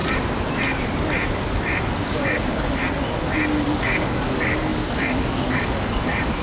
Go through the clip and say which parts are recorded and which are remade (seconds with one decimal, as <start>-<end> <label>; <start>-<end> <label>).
0.0-2.0 recorded; 2.0-2.8 remade; 2.8-3.6 recorded; 3.6-6.4 remade